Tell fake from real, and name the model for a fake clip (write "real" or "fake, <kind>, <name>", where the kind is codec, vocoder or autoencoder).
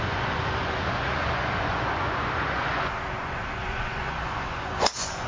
fake, vocoder, Vocos